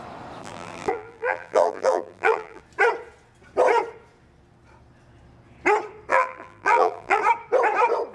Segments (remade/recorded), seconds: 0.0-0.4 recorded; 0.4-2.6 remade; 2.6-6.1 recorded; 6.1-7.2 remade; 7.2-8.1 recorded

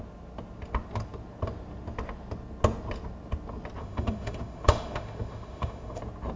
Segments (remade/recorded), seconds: 0.0-3.8 recorded; 3.8-6.0 remade; 6.0-6.4 recorded